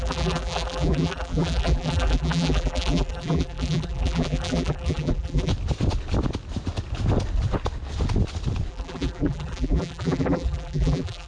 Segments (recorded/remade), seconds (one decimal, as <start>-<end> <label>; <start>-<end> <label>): 0.0-5.5 remade; 5.5-8.7 recorded; 8.7-11.3 remade